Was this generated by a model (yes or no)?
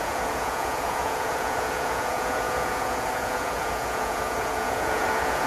yes